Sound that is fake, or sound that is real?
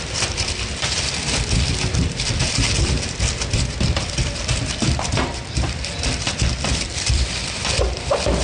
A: fake